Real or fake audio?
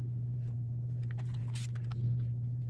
real